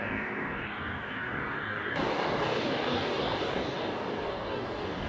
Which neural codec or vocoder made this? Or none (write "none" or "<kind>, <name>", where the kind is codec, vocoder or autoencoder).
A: codec, DAC